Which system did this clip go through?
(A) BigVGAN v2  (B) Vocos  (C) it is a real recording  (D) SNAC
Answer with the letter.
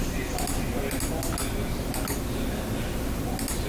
C